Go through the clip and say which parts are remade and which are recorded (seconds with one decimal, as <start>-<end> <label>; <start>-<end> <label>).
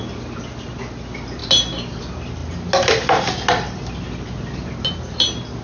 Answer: 0.0-5.6 recorded